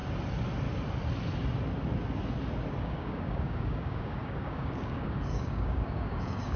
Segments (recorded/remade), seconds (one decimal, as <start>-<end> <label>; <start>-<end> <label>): 0.0-2.8 recorded; 2.8-6.6 remade